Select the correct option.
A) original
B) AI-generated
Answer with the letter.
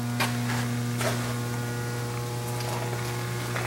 A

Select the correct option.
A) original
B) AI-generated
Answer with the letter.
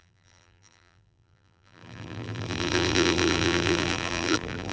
B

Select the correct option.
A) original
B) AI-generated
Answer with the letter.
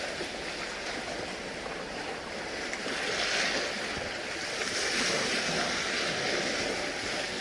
A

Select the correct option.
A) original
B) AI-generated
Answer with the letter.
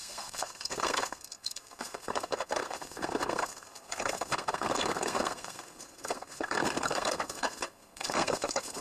B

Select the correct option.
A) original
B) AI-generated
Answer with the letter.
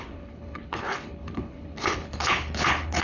B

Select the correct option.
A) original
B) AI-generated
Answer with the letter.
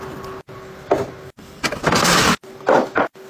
A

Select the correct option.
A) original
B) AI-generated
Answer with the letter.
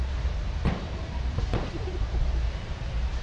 B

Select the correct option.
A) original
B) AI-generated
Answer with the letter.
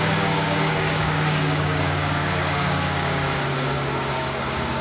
B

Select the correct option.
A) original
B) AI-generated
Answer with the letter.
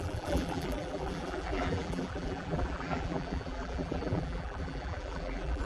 B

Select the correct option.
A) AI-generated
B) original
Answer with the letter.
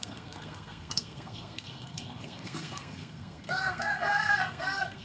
A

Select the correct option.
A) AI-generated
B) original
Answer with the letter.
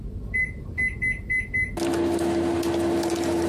B